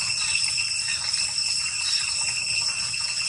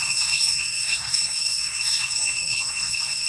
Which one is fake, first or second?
second